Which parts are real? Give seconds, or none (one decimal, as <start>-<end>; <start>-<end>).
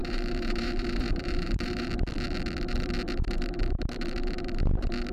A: 1.9-5.1